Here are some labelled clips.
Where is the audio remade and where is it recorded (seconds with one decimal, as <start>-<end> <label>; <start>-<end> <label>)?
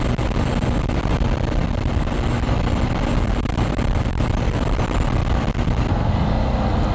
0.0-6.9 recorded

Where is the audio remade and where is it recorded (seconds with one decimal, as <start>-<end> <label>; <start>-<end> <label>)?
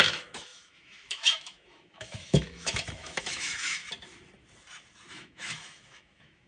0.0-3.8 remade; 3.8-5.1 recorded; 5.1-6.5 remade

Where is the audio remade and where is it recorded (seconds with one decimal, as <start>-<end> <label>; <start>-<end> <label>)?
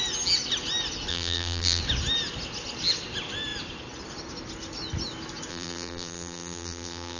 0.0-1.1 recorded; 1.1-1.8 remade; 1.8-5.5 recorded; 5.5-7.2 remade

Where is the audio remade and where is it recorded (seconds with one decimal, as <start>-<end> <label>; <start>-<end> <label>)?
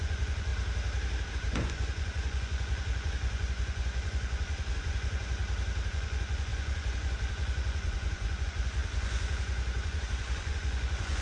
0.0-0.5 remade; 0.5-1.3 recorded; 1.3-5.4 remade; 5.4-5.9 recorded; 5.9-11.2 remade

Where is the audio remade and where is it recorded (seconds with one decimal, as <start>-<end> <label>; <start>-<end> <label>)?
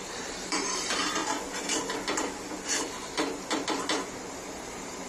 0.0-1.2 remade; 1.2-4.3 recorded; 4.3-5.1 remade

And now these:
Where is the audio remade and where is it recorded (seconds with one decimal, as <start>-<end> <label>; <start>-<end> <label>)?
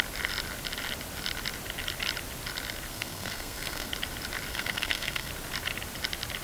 0.0-2.9 recorded; 2.9-3.9 remade; 3.9-4.5 recorded; 4.5-5.3 remade; 5.3-6.4 recorded